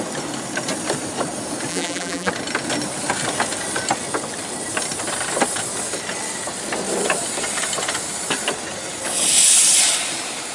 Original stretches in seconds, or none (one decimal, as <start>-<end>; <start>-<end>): 0.0-1.7; 2.3-10.5